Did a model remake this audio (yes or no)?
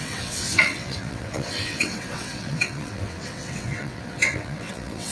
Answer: yes